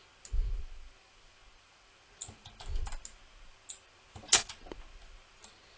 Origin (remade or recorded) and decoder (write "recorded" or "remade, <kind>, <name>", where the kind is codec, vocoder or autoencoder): recorded